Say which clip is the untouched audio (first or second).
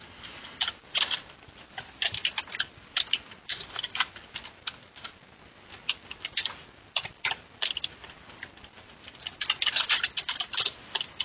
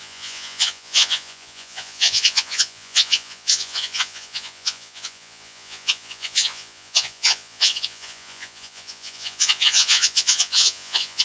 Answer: first